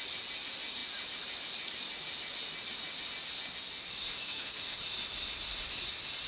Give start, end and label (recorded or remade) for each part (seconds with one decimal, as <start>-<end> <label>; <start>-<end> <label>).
0.0-4.2 recorded; 4.2-4.8 remade; 4.8-6.3 recorded